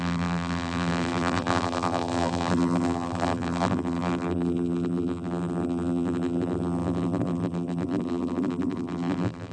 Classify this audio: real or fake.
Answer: fake